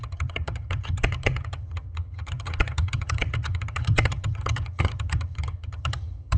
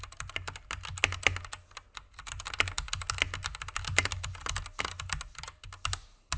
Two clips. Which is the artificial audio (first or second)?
first